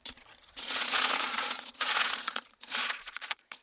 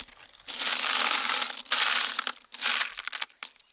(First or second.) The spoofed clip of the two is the first